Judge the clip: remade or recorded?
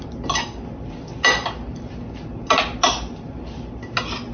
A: recorded